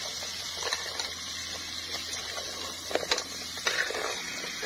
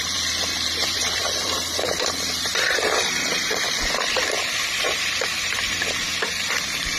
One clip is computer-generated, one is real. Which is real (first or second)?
first